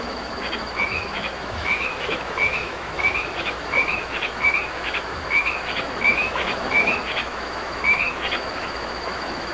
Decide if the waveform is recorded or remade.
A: remade